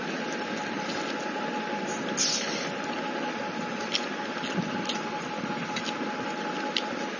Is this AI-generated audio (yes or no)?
no